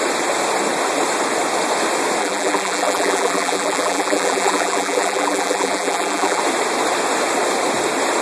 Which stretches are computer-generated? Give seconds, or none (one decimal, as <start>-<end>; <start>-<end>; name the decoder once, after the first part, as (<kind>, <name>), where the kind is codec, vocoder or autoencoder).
2.2-6.4 (vocoder, BigVGAN v2)